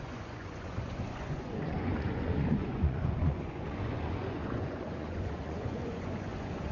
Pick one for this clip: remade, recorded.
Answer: remade